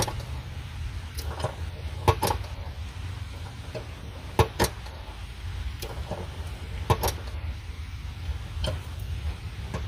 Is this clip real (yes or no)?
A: yes